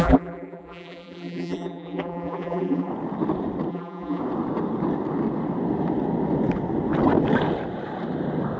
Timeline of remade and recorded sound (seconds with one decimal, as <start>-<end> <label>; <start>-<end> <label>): 0.0-2.9 remade; 2.9-3.7 recorded; 3.7-4.2 remade; 4.2-8.6 recorded